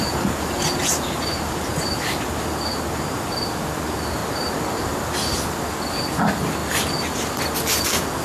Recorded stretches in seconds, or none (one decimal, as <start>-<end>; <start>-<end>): 0.0-8.2